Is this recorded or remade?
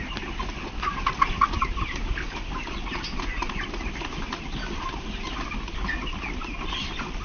recorded